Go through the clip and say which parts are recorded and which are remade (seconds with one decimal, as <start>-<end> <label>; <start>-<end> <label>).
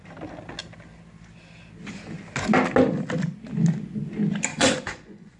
0.0-4.5 recorded; 4.5-5.4 remade